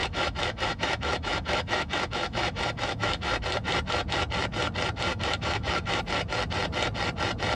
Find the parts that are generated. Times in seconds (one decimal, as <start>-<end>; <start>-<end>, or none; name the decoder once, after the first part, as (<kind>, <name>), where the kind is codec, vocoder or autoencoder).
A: 0.0-3.4 (autoencoder, DAC-VAE); 5.1-6.0